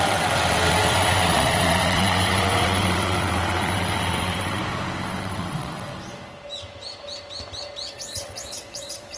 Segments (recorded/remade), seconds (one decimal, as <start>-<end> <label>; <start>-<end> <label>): 0.0-4.6 remade; 4.6-5.2 recorded; 5.2-5.9 remade; 5.9-7.9 recorded; 7.9-9.2 remade